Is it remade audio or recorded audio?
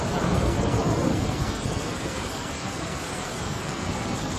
remade